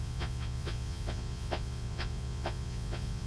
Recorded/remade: remade